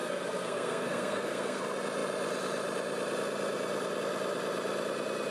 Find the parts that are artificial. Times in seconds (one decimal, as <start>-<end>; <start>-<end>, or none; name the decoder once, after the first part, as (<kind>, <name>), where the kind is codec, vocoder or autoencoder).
0.0-1.6 (codec, SNAC)